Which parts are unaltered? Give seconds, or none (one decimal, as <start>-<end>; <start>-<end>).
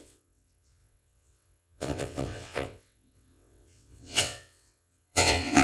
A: none